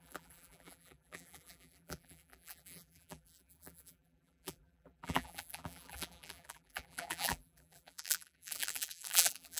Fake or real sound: fake